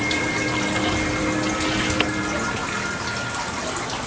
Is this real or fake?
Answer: real